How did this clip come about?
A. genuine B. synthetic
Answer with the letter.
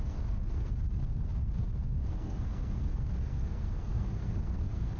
B